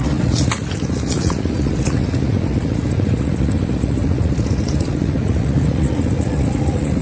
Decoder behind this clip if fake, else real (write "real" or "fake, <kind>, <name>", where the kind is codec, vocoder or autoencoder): fake, vocoder, Vocos